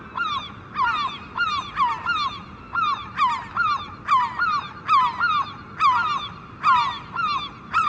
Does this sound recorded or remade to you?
recorded